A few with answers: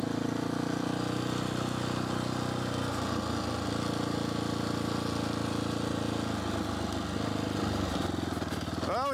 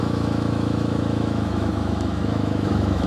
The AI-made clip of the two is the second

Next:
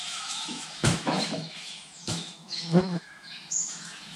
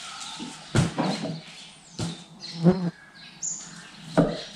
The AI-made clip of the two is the first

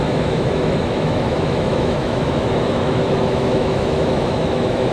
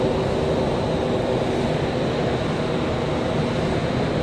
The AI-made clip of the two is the first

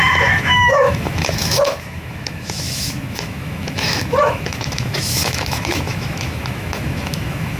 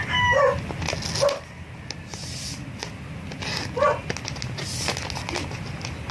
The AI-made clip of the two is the first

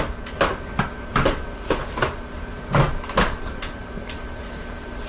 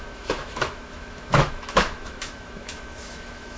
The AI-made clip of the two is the second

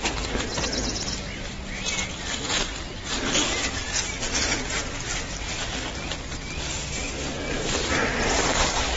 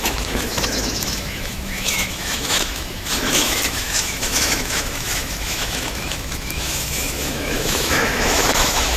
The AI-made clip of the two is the second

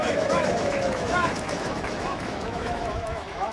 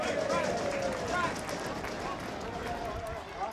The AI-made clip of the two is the first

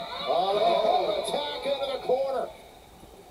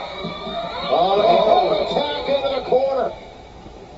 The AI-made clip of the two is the second